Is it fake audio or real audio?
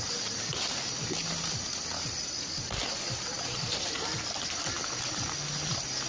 real